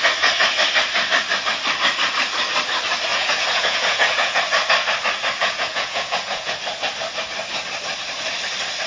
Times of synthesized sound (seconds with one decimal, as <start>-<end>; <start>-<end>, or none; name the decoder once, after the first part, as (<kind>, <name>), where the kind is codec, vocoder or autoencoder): 3.1-4.4 (vocoder, Vocos); 5.4-6.6